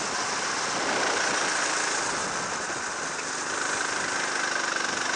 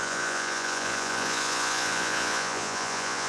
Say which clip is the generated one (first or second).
second